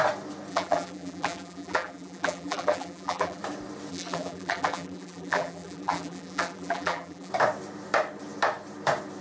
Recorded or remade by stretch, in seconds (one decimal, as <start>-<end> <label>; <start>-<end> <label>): 0.0-0.5 recorded; 0.5-3.4 remade; 3.4-3.9 recorded; 3.9-7.3 remade; 7.3-9.2 recorded